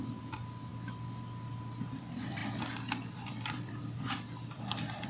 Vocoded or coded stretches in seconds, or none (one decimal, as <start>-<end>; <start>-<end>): 0.0-0.7; 2.0-5.1